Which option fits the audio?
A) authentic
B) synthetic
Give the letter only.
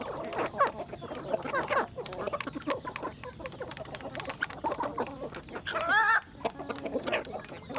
A